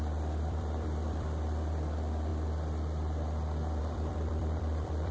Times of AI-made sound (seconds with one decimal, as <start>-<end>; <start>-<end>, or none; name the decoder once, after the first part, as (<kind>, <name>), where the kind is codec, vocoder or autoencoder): 0.0-2.3 (vocoder, BigVGAN v2); 3.8-5.1